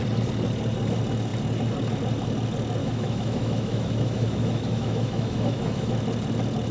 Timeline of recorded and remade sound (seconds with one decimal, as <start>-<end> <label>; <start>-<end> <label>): 0.0-2.8 recorded; 2.8-5.9 remade; 5.9-6.7 recorded